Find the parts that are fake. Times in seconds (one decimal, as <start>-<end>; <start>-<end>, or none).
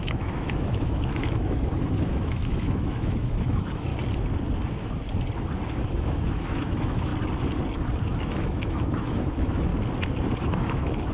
0.0-3.9; 5.9-7.1; 8.2-9.7; 10.5-11.1